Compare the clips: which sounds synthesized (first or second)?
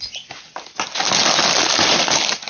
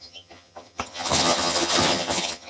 second